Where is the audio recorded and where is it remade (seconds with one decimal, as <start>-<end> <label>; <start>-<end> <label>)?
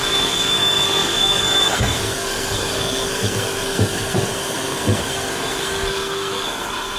0.0-7.0 remade